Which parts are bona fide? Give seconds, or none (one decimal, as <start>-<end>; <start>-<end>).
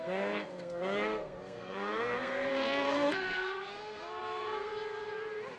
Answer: 4.7-5.6